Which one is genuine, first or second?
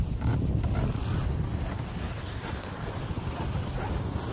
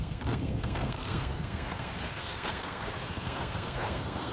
first